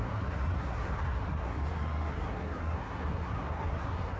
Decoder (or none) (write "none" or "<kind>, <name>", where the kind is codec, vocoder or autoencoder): codec, SNAC